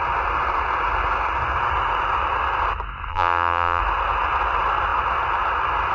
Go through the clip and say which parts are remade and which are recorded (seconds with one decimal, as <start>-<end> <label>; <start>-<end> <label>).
0.0-3.1 recorded; 3.1-3.8 remade; 3.8-5.9 recorded